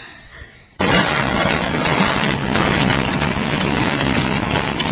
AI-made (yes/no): yes